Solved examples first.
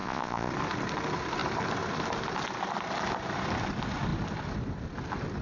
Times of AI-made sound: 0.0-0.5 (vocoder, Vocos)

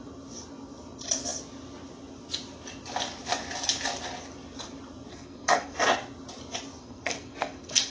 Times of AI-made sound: 5.1-5.8 (codec, SNAC); 6.8-7.9

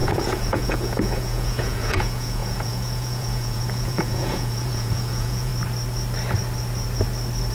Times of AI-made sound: 0.0-5.5 (vocoder, Vocos)

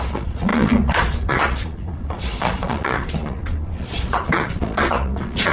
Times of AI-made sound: 0.0-5.5 (vocoder, Vocos)

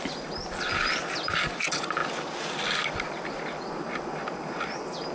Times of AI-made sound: none

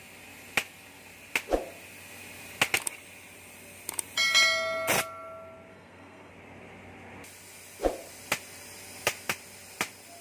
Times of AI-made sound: 5.7-6.3 (codec, SNAC)